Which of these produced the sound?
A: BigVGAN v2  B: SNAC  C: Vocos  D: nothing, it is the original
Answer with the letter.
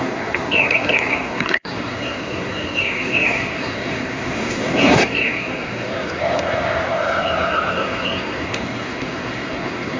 B